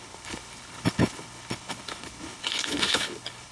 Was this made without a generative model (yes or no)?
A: no